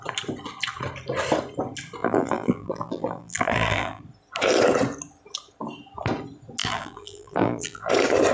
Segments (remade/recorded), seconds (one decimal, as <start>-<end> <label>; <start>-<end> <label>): 0.0-2.0 recorded; 2.0-4.0 remade; 4.0-6.6 recorded; 6.6-7.9 remade; 7.9-8.3 recorded